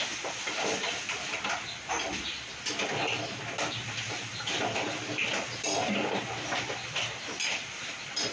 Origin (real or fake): real